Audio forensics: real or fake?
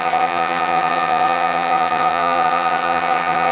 fake